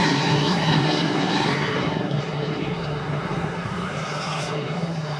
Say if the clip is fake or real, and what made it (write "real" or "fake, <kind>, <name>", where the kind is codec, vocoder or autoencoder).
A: fake, codec, SNAC